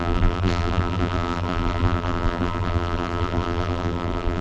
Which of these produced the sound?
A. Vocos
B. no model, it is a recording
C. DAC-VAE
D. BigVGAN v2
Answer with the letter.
D